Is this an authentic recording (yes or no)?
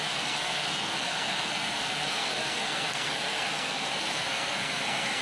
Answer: no